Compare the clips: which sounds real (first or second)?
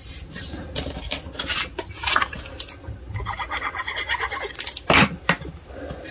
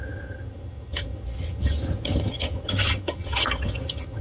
first